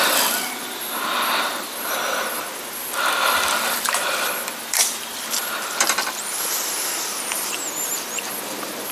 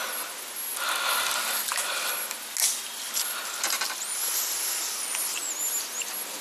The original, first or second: second